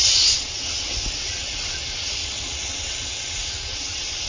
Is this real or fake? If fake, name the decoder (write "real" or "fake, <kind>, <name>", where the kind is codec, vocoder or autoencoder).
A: fake, vocoder, WaveNeXt